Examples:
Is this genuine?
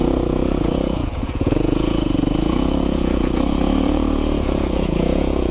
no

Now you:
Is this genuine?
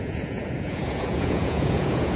no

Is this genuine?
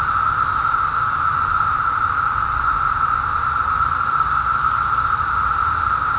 yes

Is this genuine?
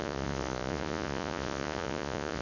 no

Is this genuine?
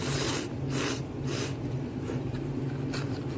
yes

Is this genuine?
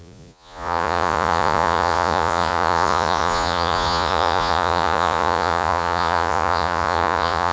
no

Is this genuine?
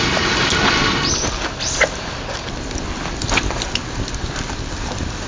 yes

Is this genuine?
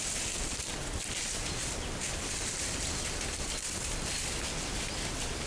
yes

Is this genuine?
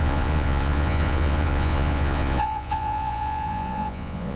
no